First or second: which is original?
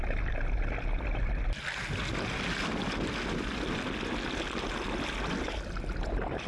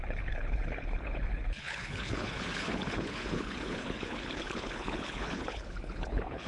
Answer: first